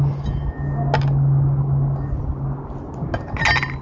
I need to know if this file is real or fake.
real